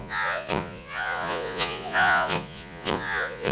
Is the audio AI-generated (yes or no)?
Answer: yes